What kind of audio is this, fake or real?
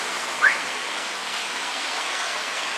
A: fake